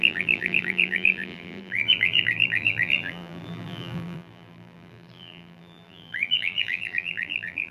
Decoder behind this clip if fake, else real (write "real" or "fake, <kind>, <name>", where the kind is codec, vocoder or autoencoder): fake, vocoder, BigVGAN v2